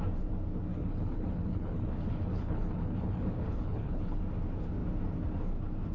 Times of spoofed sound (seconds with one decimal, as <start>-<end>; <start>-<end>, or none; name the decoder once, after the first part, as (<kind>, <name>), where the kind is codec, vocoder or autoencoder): 0.7-4.2 (codec, HILCodec)